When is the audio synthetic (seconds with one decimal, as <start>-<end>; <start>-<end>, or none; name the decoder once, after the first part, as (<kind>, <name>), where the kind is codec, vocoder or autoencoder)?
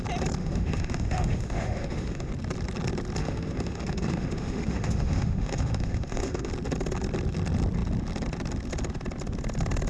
0.4-2.3 (autoencoder, DAC-VAE); 3.2-6.5